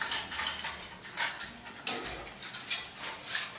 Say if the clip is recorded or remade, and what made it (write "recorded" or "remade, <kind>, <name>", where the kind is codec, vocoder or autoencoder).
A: recorded